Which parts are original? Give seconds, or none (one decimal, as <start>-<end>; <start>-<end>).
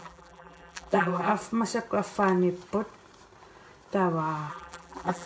1.3-4.5